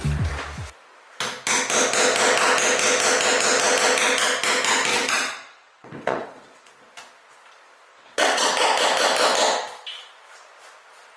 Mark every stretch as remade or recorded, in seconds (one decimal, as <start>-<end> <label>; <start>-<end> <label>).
0.0-4.9 recorded; 4.9-6.7 remade; 6.7-7.9 recorded; 7.9-8.5 remade; 8.5-11.2 recorded